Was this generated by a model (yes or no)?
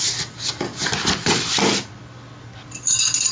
no